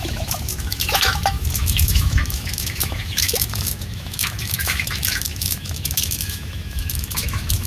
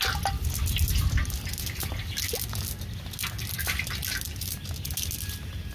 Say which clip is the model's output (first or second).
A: first